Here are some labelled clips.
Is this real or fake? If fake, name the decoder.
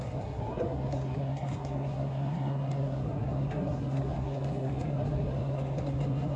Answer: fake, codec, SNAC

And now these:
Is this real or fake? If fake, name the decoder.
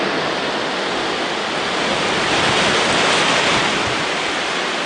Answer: real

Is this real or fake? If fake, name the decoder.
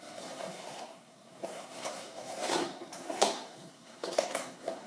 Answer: fake, codec, SNAC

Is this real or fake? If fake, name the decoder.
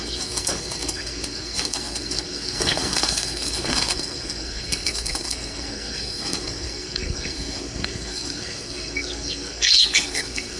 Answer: fake, codec, SNAC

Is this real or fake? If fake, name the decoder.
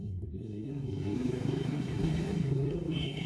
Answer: fake, codec, SNAC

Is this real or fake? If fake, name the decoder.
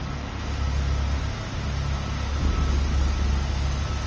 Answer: real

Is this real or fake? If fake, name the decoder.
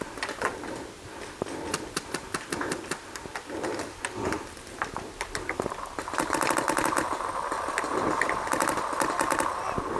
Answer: real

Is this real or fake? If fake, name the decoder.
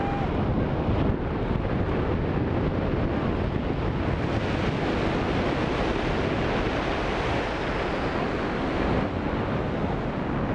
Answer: real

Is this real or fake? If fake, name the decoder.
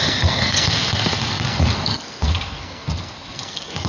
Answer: fake, codec, SNAC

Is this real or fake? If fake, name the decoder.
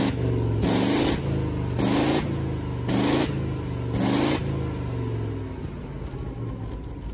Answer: real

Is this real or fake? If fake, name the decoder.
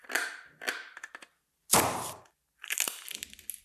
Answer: real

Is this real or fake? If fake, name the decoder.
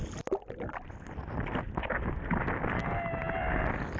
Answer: real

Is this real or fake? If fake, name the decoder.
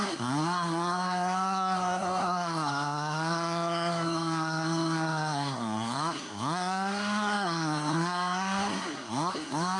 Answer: fake, codec, SNAC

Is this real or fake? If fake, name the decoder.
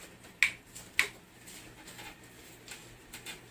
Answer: real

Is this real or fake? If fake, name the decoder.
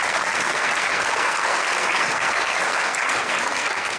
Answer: fake, codec, SNAC